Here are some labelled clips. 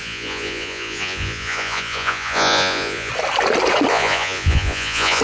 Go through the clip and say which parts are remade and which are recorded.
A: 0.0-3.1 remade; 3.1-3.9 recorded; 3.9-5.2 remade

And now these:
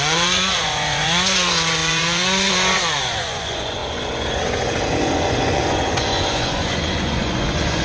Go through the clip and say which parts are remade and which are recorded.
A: 0.0-7.8 remade

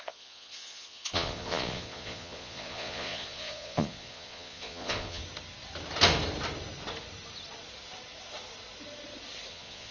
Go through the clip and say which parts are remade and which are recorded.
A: 0.0-5.2 remade; 5.2-9.5 recorded; 9.5-9.9 remade

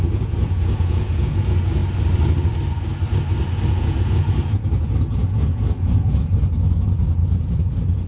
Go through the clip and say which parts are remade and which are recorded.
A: 0.0-1.8 remade; 1.8-3.7 recorded; 3.7-8.1 remade